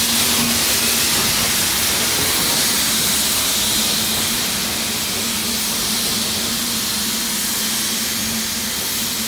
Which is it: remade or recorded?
recorded